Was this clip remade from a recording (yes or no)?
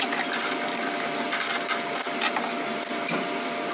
no